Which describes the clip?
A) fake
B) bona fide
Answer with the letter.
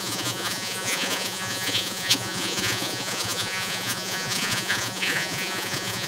A